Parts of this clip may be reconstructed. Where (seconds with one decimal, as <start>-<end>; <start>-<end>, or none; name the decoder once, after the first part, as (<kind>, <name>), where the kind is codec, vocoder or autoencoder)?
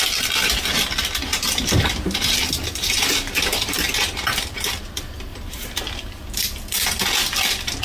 1.3-4.8 (vocoder, BigVGAN v2); 5.3-6.2